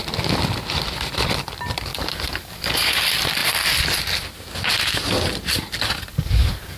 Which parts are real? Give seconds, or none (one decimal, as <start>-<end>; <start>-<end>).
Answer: 0.0-1.9; 2.9-6.1